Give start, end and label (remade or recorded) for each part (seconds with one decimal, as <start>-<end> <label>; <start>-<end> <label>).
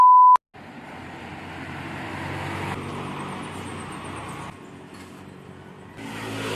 0.0-6.6 recorded